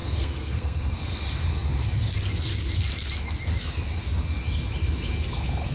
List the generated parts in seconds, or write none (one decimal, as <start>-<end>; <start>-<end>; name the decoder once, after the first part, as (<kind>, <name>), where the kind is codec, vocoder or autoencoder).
0.0-1.2 (codec, SNAC)